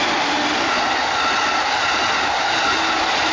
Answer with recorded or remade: recorded